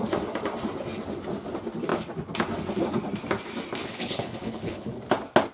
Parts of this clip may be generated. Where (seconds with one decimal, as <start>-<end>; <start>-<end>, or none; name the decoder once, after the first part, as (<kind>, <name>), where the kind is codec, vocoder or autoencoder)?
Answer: 3.8-5.0 (codec, HILCodec)

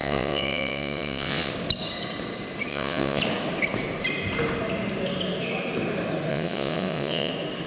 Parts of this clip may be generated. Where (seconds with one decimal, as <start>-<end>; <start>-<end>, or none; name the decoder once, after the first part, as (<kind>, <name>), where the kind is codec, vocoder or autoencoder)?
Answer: 0.0-1.5 (vocoder, WaveNeXt); 2.7-3.2; 6.3-7.3

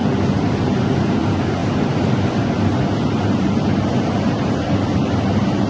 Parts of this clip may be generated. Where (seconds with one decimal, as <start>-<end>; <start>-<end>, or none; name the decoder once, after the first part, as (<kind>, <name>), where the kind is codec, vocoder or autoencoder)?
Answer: none

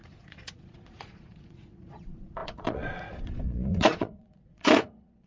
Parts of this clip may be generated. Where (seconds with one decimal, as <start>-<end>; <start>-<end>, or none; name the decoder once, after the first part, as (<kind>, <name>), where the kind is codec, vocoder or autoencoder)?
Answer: 0.0-5.3 (vocoder, Vocos)

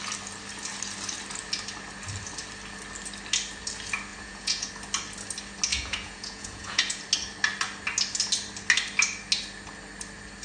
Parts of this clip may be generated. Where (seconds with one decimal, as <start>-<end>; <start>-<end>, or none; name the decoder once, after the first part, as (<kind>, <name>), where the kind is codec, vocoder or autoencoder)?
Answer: 4.1-4.7 (vocoder, Vocos); 5.7-7.0

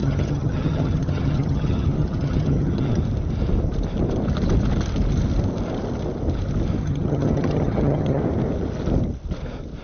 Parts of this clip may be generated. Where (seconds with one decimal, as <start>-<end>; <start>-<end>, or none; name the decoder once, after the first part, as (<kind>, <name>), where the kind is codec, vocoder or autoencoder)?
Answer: 0.0-3.0 (vocoder, HiFi-GAN); 6.8-8.2

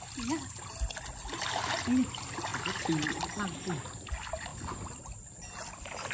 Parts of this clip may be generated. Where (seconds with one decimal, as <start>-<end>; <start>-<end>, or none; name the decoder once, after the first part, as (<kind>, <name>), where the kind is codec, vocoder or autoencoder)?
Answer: 4.5-5.1 (vocoder, BigVGAN v2)

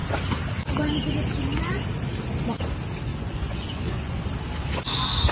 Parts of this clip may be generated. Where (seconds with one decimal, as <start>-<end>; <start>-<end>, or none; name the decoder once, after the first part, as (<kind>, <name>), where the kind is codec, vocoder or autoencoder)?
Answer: 3.1-4.2 (vocoder, Vocos)